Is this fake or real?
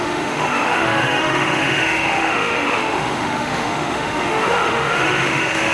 fake